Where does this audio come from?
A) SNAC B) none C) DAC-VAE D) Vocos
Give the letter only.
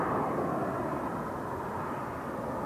B